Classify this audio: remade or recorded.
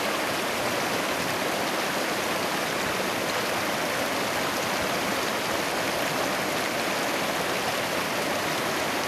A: recorded